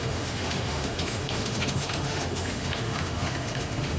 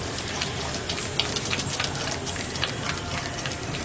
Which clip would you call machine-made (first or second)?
first